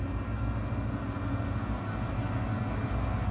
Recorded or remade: recorded